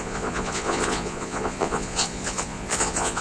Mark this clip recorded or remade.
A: remade